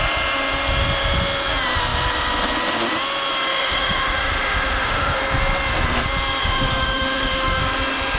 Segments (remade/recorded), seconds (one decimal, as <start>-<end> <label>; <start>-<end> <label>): 0.0-3.5 recorded; 3.5-5.2 remade; 5.2-6.4 recorded; 6.4-7.6 remade; 7.6-8.2 recorded